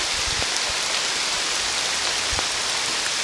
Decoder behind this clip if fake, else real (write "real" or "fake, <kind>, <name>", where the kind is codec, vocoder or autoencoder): real